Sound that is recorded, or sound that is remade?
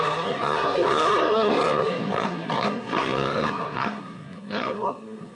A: remade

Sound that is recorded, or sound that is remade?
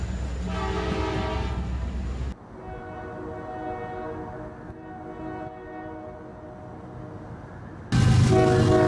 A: recorded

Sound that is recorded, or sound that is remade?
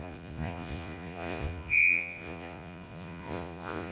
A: remade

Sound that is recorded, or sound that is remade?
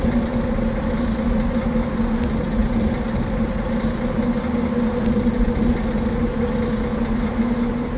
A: recorded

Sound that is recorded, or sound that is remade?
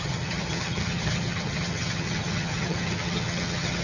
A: remade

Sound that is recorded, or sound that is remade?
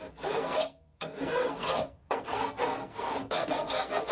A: remade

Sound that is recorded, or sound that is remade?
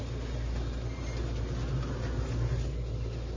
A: recorded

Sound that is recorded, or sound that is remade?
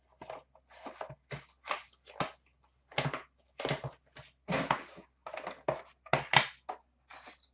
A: recorded